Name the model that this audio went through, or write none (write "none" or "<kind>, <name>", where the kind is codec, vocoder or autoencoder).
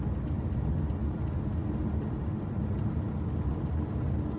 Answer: none